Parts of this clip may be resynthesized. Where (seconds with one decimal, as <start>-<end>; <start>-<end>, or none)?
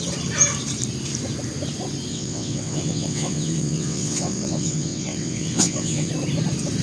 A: 2.1-6.1